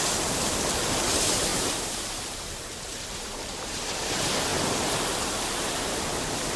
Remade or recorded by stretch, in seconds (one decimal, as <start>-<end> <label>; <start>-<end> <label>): 0.0-1.5 recorded; 1.5-3.8 remade; 3.8-6.6 recorded

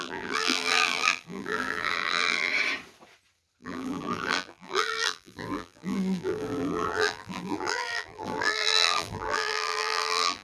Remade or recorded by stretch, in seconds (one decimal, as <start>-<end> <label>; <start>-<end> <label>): 0.0-2.5 remade; 2.5-3.6 recorded; 3.6-10.4 remade

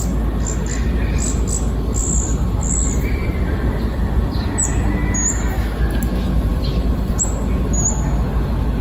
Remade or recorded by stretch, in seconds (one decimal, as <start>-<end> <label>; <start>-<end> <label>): 0.0-2.0 recorded; 2.0-4.3 remade; 4.3-6.5 recorded; 6.5-7.1 remade; 7.1-8.8 recorded